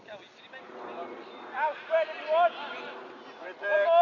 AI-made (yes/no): no